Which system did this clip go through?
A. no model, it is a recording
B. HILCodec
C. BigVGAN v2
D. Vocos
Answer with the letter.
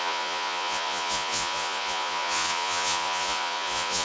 D